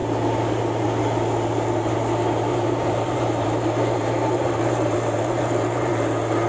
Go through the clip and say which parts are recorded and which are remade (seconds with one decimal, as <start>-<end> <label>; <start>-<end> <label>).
0.0-2.5 recorded; 2.5-5.9 remade; 5.9-6.5 recorded